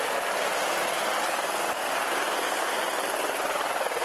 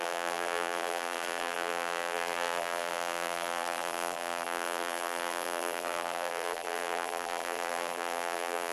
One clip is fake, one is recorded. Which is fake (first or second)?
second